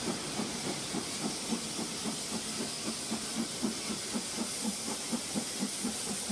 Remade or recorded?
recorded